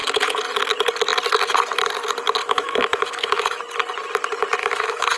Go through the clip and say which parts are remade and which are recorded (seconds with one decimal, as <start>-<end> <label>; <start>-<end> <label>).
0.0-2.4 recorded; 2.4-3.6 remade; 3.6-4.6 recorded; 4.6-5.2 remade